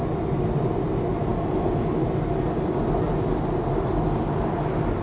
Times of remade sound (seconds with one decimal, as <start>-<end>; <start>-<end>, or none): none